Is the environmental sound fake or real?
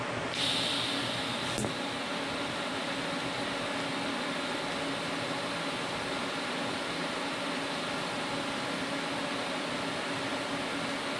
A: real